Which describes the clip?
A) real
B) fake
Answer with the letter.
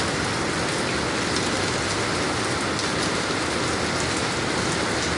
A